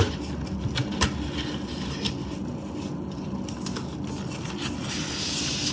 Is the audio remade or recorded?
recorded